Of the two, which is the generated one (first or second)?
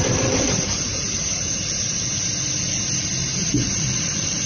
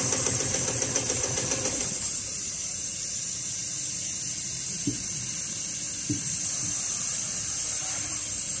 second